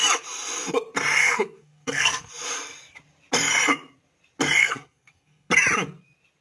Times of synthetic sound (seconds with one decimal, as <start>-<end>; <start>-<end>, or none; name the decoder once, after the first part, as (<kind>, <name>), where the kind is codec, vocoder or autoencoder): 1.2-2.3 (codec, SNAC); 4.6-5.5